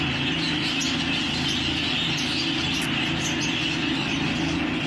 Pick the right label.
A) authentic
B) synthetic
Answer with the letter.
A